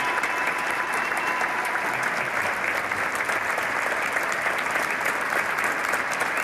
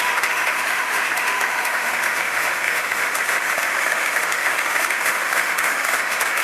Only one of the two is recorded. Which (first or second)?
first